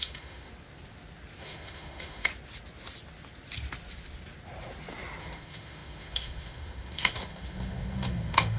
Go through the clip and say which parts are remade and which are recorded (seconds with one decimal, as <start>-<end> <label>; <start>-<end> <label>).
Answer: 0.0-0.5 remade; 0.5-1.4 recorded; 1.4-2.3 remade; 2.3-5.2 recorded; 5.2-8.6 remade